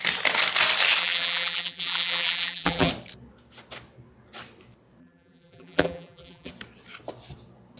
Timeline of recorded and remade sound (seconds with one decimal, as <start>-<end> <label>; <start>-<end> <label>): 0.0-1.0 recorded; 1.0-2.9 remade; 2.9-5.0 recorded; 5.0-6.5 remade; 6.5-7.8 recorded